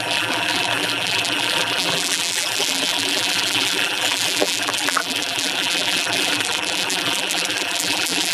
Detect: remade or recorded remade